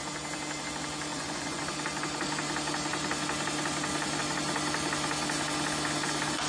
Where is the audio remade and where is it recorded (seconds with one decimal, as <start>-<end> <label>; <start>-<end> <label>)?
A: 0.0-1.1 recorded; 1.1-1.6 remade; 1.6-6.5 recorded